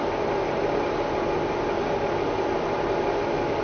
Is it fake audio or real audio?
real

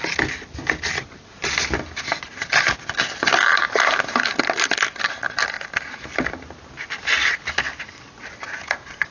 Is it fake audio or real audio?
real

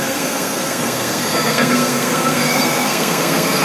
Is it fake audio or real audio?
fake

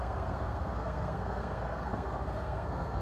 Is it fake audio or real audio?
fake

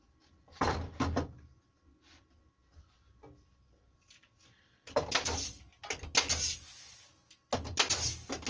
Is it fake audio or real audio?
real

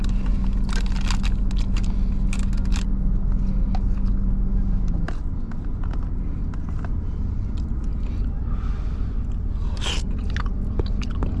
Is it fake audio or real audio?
real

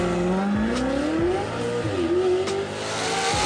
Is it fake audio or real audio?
real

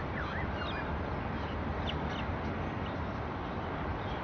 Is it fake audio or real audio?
real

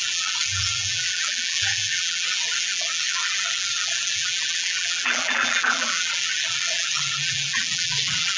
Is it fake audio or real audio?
fake